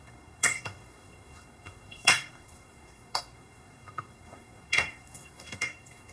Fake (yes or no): yes